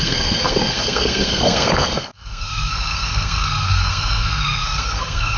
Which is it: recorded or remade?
remade